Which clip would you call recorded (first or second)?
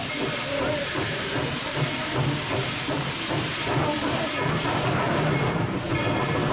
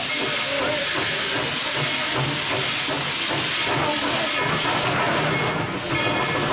second